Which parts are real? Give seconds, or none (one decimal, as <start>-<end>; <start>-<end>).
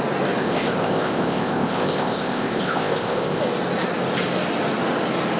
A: 0.0-0.4; 3.4-5.4